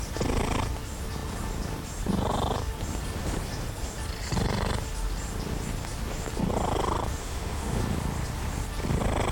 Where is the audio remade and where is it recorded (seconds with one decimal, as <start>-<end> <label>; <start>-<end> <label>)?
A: 0.0-7.2 recorded; 7.2-7.8 remade; 7.8-9.3 recorded